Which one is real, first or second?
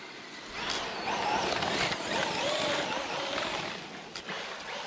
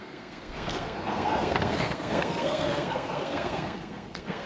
first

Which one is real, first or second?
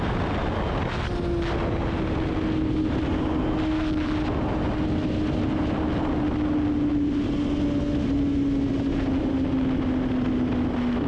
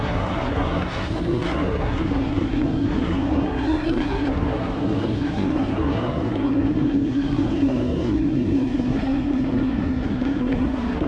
first